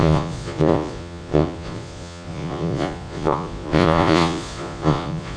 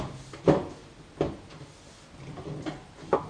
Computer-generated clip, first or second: first